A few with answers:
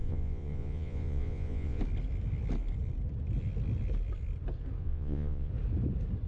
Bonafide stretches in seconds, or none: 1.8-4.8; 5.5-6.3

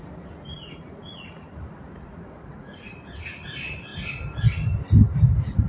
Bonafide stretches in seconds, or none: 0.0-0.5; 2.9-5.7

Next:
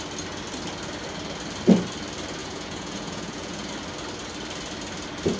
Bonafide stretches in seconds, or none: 0.0-2.4; 3.7-5.4